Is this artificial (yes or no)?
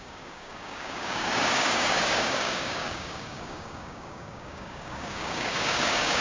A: yes